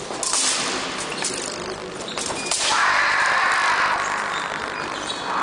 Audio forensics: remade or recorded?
recorded